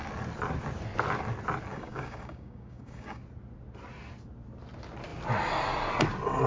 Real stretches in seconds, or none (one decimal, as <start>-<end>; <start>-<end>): 0.0-1.7; 3.2-6.5